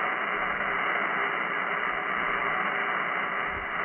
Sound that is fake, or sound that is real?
real